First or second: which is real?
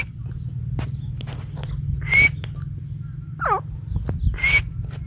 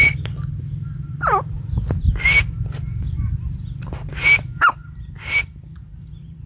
first